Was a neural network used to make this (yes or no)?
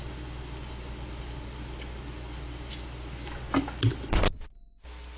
no